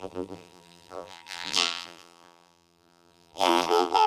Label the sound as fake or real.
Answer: fake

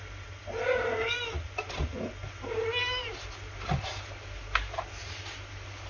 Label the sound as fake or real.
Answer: real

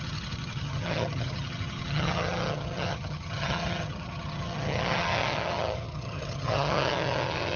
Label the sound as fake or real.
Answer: fake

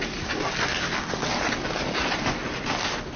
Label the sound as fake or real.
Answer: real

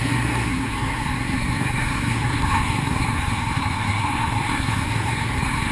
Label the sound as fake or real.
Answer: fake